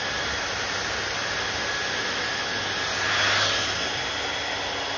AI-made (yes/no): no